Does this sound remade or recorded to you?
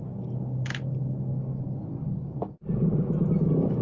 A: recorded